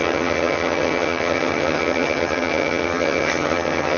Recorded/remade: remade